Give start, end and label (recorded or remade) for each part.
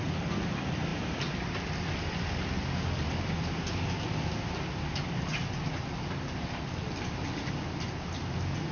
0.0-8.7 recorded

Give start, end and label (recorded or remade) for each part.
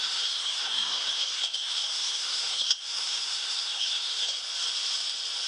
0.0-4.4 remade; 4.4-5.5 recorded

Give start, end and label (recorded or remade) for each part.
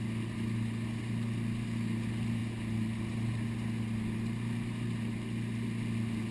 0.0-6.3 recorded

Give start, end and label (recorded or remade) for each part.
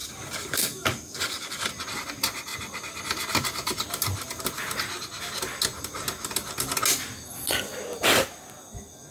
0.0-1.7 remade; 1.7-9.1 recorded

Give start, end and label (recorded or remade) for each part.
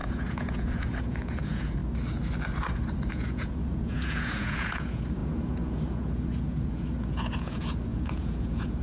0.0-1.8 remade; 1.8-3.1 recorded; 3.1-8.8 remade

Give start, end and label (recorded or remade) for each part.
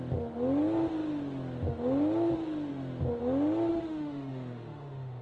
0.0-3.7 recorded; 3.7-5.2 remade